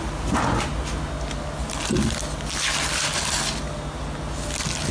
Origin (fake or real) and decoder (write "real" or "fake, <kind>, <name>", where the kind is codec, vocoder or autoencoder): real